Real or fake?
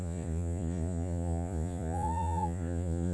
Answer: fake